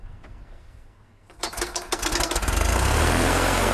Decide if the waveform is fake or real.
fake